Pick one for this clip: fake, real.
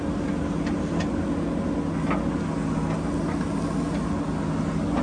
real